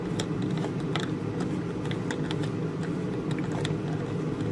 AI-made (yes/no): no